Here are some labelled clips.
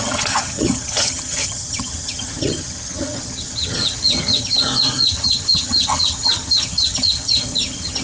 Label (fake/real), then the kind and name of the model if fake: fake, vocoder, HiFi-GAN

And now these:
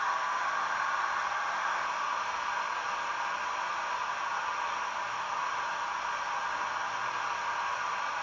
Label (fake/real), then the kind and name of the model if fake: real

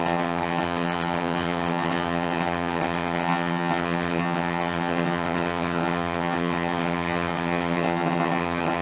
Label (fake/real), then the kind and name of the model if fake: fake, vocoder, HiFi-GAN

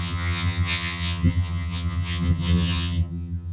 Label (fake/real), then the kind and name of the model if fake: fake, vocoder, HiFi-GAN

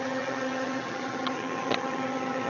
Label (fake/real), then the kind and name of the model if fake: fake, vocoder, HiFi-GAN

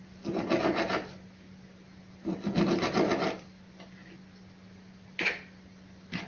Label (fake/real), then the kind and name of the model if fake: real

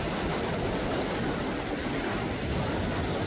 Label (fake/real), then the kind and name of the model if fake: real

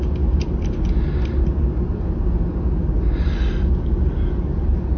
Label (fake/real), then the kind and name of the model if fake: real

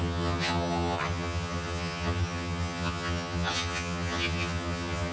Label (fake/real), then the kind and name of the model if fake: fake, vocoder, HiFi-GAN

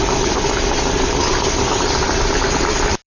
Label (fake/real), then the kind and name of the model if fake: real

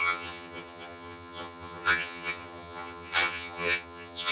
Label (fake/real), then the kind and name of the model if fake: fake, vocoder, HiFi-GAN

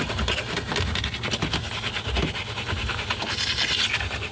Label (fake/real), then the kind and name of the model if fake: real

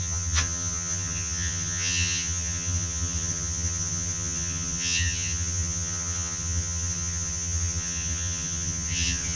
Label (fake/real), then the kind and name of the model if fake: fake, vocoder, HiFi-GAN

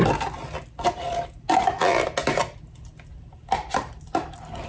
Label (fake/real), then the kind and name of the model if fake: real